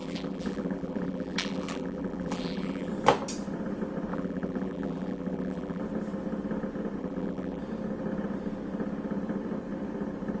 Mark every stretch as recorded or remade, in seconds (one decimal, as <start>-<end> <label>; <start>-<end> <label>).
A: 0.0-2.9 remade; 2.9-4.1 recorded; 4.1-5.8 remade; 5.8-7.0 recorded; 7.0-7.6 remade; 7.6-10.4 recorded